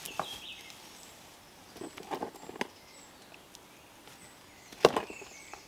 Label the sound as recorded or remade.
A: recorded